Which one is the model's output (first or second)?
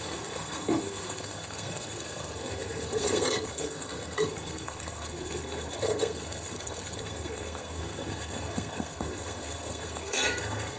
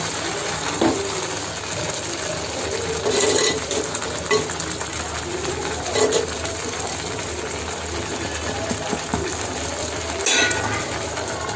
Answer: first